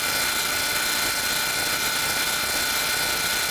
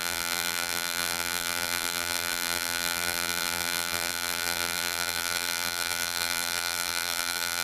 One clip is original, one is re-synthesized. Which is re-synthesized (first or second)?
second